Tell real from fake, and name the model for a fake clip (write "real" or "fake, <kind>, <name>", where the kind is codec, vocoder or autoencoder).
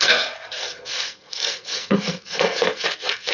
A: fake, codec, SNAC